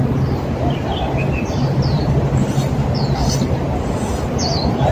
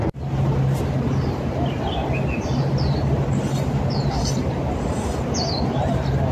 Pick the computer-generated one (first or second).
first